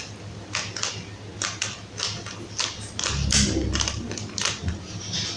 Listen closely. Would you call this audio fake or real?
real